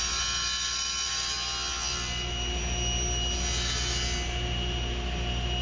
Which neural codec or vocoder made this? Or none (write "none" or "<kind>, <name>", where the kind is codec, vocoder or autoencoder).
none